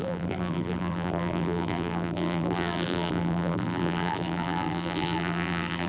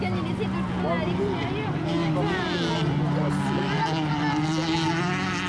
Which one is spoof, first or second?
first